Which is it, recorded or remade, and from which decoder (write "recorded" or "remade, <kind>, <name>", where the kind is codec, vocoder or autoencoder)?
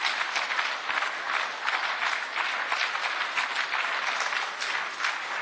recorded